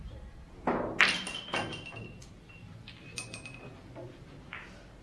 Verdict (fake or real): real